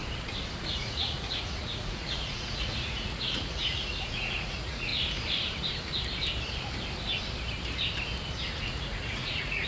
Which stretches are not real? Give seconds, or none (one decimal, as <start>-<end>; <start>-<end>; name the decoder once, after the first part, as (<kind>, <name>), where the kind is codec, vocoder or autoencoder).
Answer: 0.6-4.9 (vocoder, Vocos); 8.6-9.7